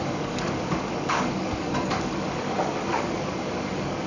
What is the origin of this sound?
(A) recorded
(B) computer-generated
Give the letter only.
B